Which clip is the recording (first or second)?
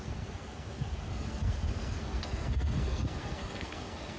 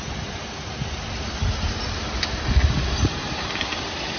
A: second